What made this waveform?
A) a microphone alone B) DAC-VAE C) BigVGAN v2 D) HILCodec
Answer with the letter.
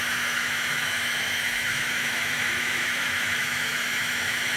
B